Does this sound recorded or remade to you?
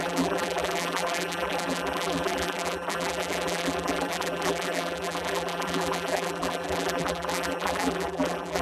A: remade